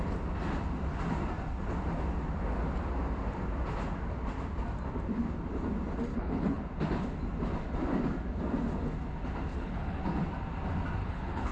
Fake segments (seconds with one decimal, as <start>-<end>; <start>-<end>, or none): 6.1-6.6; 9.5-10.0; 11.0-11.5